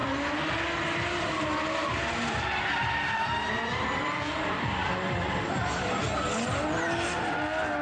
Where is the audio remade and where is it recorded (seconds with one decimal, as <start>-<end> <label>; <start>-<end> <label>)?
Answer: 0.0-7.8 recorded